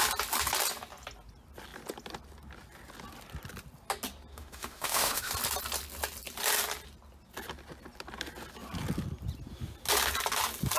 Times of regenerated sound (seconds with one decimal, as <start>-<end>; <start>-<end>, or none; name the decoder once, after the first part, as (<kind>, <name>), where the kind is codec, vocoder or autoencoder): 4.3-5.3 (autoencoder, DAC-VAE)